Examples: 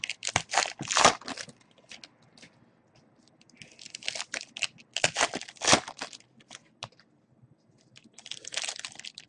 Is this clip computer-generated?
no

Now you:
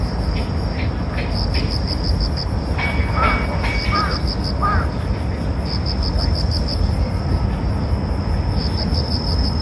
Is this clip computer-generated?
no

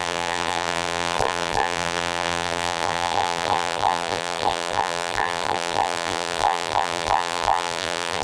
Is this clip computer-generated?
yes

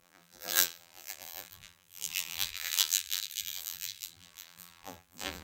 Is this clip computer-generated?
yes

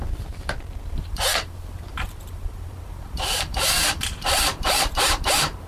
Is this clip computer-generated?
yes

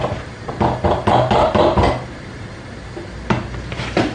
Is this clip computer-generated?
no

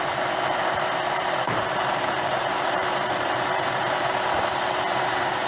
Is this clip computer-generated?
yes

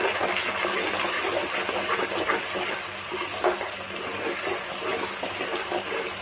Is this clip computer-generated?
no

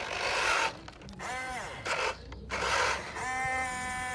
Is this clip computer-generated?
no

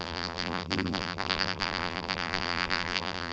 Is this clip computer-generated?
yes